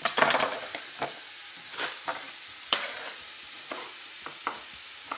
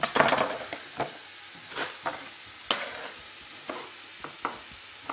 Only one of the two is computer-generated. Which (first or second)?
first